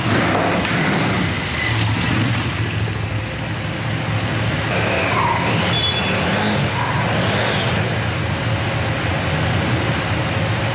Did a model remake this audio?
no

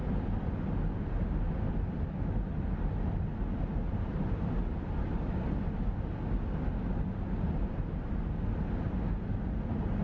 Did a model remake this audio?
no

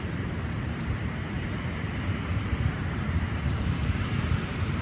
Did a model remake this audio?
yes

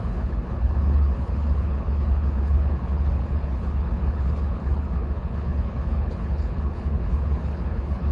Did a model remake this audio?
yes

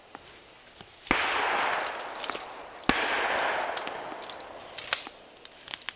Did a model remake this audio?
no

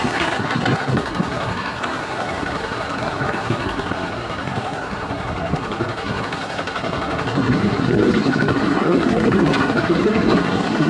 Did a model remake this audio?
yes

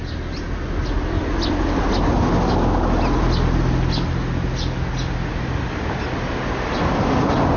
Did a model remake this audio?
no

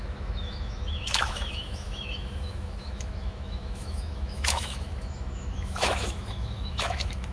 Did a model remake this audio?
yes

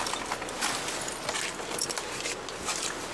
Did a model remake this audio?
no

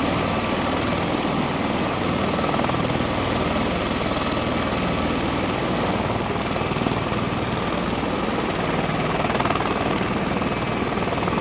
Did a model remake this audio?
no